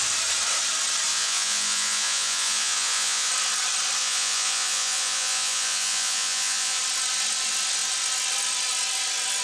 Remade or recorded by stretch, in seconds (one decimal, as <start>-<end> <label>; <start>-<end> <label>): 0.0-1.1 recorded; 1.1-3.3 remade; 3.3-4.0 recorded; 4.0-6.8 remade; 6.8-9.4 recorded